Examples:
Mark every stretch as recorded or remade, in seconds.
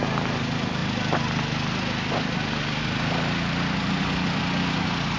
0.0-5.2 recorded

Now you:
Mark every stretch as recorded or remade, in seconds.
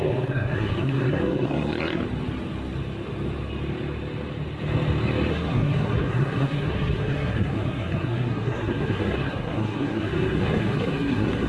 0.0-2.0 remade; 2.0-5.3 recorded; 5.3-11.5 remade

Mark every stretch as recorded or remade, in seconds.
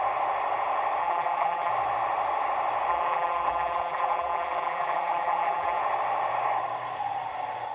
0.0-1.0 recorded; 1.0-1.7 remade; 1.7-2.9 recorded; 2.9-5.8 remade; 5.8-7.7 recorded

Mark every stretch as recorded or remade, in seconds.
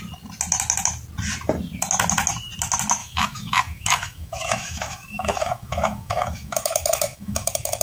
0.0-3.0 recorded; 3.0-7.8 remade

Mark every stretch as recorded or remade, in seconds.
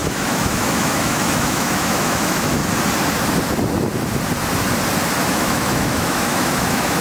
0.0-2.6 remade; 2.6-5.3 recorded; 5.3-7.0 remade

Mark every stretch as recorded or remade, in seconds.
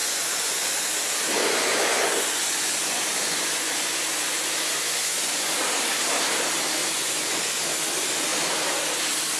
0.0-0.7 remade; 0.7-1.4 recorded; 1.4-5.6 remade; 5.6-6.8 recorded; 6.8-7.5 remade; 7.5-9.4 recorded